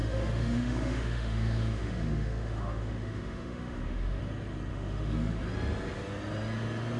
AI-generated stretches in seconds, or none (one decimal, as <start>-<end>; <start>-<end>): 0.0-4.2; 4.7-5.4